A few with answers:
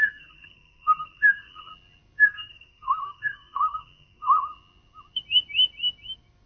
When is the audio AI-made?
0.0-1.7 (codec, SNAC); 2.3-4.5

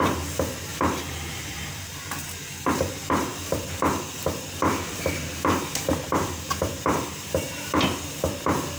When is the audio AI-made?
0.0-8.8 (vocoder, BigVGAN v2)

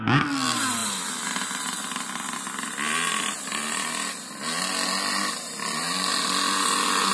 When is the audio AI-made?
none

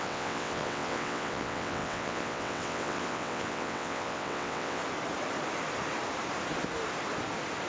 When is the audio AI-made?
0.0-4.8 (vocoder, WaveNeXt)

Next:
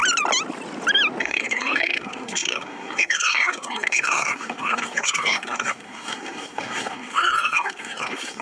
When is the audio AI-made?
1.2-8.4 (codec, SNAC)

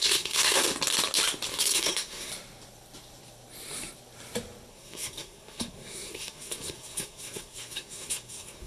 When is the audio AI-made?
0.0-0.7 (codec, SNAC); 1.5-2.3; 4.7-8.7